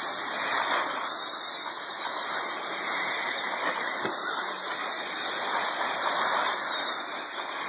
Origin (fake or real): real